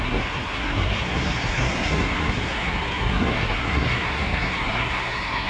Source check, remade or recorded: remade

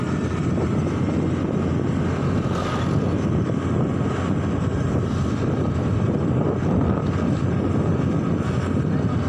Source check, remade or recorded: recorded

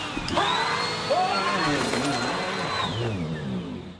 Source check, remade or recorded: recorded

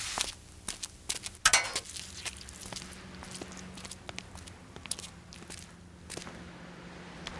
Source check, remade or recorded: recorded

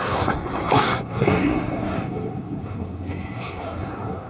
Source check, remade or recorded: remade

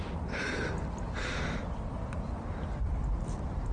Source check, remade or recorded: recorded